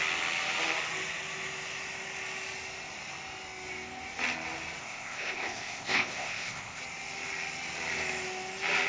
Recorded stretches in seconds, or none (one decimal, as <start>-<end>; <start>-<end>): 0.0-4.8; 6.8-8.9